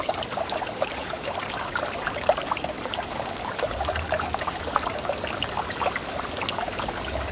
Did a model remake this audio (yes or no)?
yes